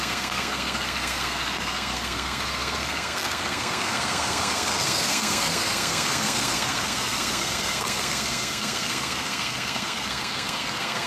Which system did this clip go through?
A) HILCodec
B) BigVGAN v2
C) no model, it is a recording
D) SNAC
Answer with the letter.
D